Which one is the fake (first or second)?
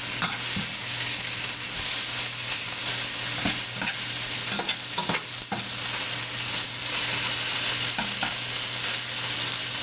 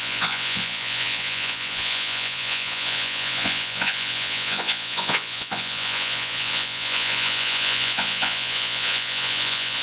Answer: second